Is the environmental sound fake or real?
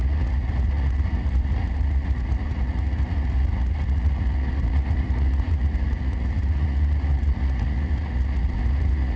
fake